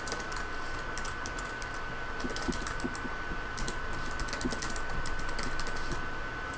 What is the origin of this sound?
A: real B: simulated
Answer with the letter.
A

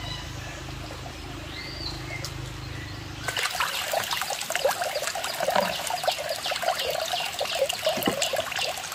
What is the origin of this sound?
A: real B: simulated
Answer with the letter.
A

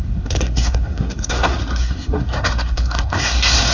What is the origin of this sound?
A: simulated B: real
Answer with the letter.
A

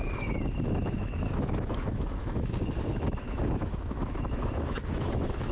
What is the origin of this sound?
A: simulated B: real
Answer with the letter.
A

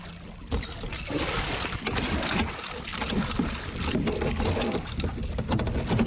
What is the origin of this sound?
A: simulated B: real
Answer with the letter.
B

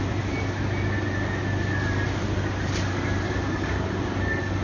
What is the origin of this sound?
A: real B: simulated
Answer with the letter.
A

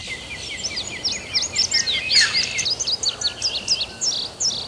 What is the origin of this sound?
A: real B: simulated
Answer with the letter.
A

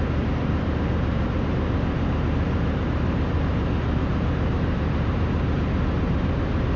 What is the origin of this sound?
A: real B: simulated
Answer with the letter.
B